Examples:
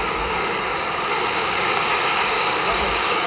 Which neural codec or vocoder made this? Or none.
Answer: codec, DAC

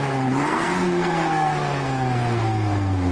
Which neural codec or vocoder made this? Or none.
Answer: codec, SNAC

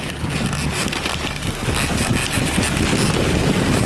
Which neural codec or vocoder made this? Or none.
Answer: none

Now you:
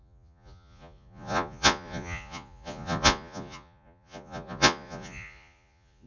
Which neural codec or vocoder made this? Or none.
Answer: vocoder, Vocos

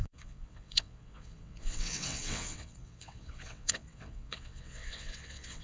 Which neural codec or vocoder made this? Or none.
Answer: vocoder, WaveNeXt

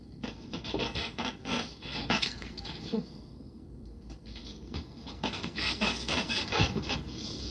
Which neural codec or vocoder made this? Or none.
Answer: codec, SNAC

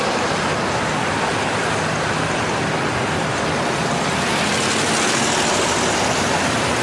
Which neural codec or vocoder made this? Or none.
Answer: none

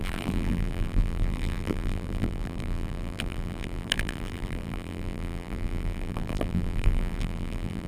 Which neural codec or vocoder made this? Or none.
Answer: vocoder, BigVGAN v2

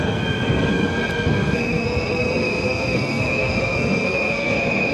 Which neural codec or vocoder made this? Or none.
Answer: codec, SNAC